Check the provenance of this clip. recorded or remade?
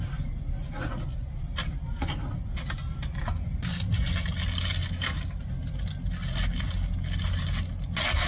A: recorded